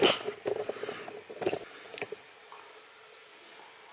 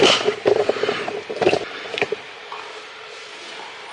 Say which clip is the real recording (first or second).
first